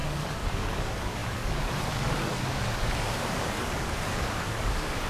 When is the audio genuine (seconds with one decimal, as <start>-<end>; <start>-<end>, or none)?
none